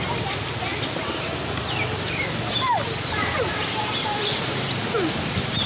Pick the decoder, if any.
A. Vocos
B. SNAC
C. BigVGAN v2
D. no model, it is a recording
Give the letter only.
D